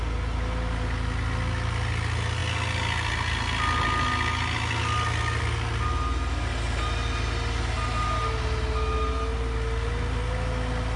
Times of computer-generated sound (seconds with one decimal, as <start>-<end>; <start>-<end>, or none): none